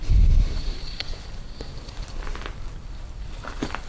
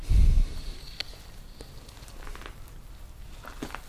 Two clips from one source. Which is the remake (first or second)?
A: first